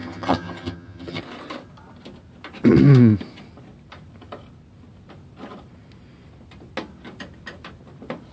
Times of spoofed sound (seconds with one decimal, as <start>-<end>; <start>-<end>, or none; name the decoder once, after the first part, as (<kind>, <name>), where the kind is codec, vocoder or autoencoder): 0.0-1.2 (vocoder, HiFi-GAN)

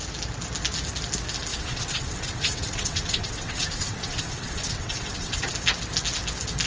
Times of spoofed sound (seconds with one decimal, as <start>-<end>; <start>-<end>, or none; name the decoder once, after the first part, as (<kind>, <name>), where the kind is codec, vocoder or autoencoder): 1.5-5.5 (vocoder, WaveNeXt)

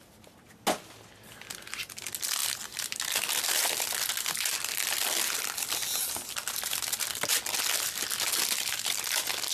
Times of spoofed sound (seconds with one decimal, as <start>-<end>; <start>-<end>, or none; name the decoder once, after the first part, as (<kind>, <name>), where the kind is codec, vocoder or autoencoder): none